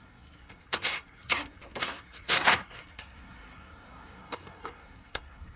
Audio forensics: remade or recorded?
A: remade